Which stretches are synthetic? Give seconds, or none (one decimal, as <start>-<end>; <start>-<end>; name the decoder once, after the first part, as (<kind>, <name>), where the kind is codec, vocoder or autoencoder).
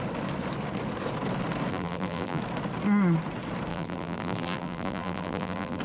1.7-2.4 (vocoder, BigVGAN v2); 3.7-5.8